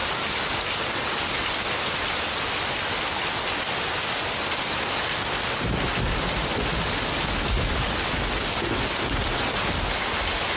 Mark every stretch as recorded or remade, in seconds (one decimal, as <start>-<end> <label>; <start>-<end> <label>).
0.0-10.6 recorded